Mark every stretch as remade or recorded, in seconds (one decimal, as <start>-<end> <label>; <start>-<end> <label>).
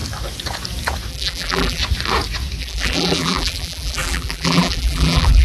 0.0-1.1 recorded; 1.1-1.8 remade; 1.8-2.6 recorded; 2.6-5.4 remade